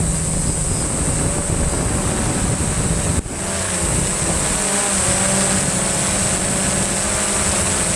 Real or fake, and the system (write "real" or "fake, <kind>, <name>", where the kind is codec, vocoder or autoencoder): real